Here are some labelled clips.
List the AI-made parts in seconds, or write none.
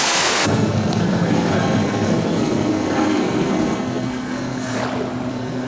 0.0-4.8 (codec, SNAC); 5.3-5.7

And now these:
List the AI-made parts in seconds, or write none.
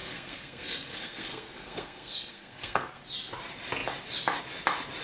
0.0-3.0 (codec, SNAC)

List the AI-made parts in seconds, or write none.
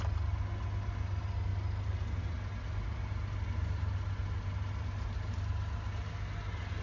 none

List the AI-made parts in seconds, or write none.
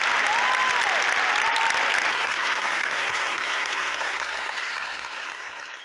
2.1-5.8 (codec, SNAC)